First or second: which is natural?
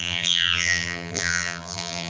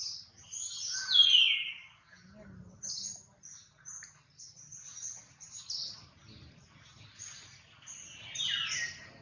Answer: second